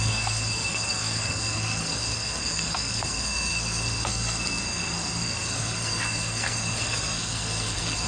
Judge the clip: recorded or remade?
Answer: remade